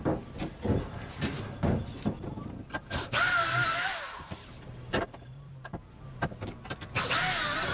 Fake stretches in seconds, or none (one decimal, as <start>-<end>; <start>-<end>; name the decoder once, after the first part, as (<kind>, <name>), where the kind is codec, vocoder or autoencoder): 2.8-6.6 (vocoder, BigVGAN v2)